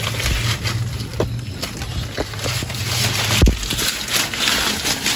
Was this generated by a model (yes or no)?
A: no